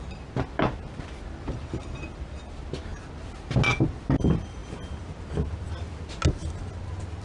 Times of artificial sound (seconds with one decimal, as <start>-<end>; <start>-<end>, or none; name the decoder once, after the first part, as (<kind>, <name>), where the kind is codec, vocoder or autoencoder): none